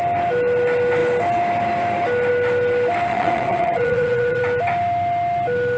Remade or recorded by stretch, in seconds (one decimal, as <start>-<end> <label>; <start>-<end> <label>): 0.0-3.1 recorded; 3.1-4.4 remade; 4.4-5.8 recorded